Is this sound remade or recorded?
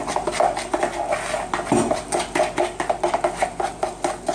recorded